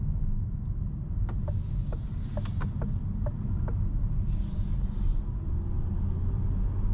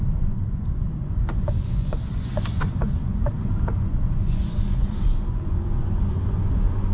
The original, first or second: first